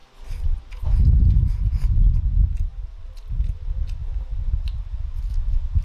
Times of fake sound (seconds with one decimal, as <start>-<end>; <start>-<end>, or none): none